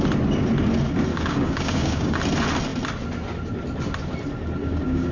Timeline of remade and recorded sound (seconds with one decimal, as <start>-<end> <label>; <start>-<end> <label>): 0.0-1.1 recorded; 1.1-2.2 remade; 2.2-4.6 recorded; 4.6-5.1 remade